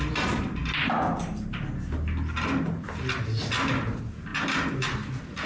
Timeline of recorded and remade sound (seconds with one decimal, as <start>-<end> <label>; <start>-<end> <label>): 0.0-5.5 recorded